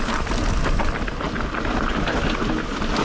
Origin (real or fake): real